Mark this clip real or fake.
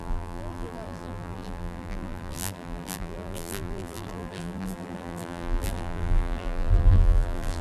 fake